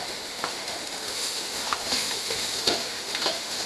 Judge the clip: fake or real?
fake